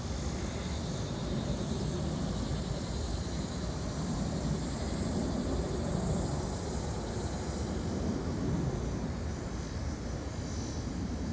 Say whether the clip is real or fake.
real